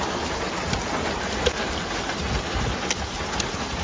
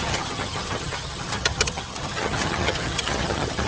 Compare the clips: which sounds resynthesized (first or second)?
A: second